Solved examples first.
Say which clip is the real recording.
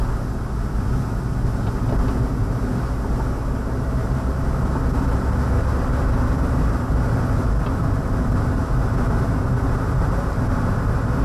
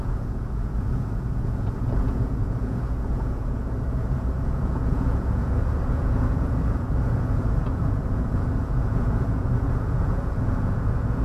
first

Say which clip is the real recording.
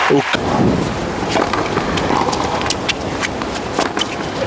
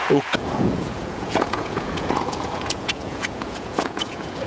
first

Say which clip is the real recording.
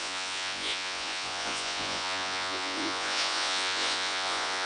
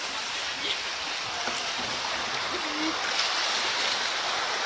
second